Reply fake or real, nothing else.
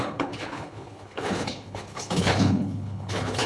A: fake